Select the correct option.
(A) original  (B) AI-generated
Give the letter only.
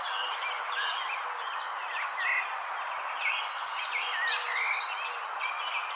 A